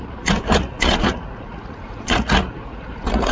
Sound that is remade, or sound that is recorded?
remade